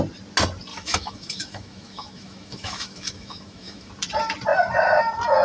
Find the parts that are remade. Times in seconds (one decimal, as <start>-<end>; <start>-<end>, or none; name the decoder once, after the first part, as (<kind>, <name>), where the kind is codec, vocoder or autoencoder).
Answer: 0.7-3.9 (autoencoder, DAC-VAE)

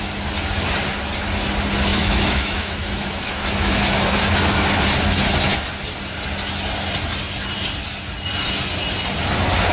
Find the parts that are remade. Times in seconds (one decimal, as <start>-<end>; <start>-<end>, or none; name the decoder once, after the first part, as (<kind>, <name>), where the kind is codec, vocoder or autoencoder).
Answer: 1.9-4.3 (autoencoder, DAC-VAE)

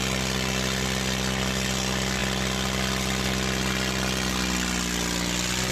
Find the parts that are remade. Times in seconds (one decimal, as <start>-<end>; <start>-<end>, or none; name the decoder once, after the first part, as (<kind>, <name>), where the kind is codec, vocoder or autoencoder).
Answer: none